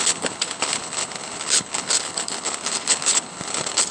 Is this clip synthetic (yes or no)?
yes